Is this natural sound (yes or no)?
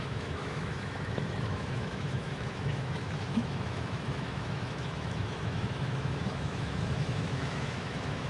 no